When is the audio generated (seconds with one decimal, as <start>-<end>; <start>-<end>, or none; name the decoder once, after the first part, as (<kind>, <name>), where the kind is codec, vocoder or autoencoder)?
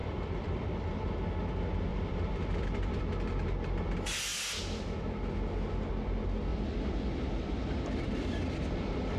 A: 0.0-1.1 (vocoder, BigVGAN v2); 1.9-3.0; 6.5-9.2